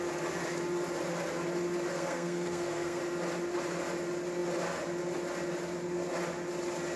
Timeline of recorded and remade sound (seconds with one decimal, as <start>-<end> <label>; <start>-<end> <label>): 0.0-1.9 recorded; 1.9-3.0 remade; 3.0-7.0 recorded